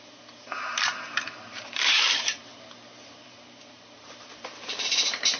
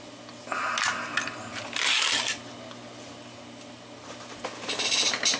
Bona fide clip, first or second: second